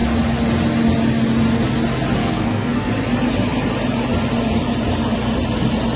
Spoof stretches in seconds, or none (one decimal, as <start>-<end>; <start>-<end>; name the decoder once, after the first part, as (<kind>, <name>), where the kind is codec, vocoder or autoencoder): 2.2-2.9 (codec, SNAC)